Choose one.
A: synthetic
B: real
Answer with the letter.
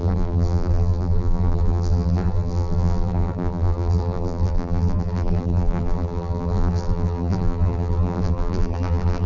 A